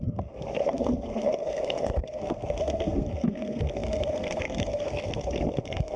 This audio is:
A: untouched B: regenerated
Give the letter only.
B